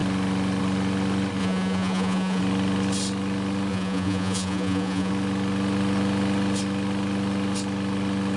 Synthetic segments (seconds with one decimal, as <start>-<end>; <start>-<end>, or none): 1.4-2.4; 3.7-5.1